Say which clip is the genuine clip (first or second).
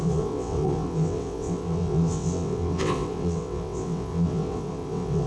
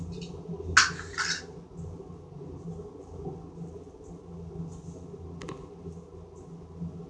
second